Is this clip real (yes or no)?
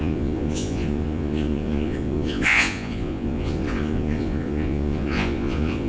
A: no